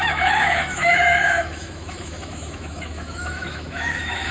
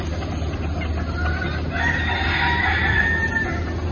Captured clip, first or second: second